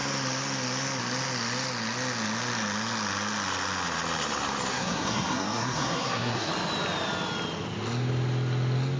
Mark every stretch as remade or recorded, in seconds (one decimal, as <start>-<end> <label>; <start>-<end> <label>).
0.0-4.7 recorded; 4.7-6.5 remade; 6.5-9.0 recorded